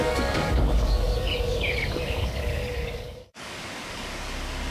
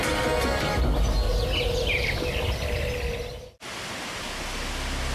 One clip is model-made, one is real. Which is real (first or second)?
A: second